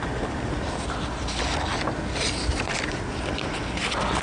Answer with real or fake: real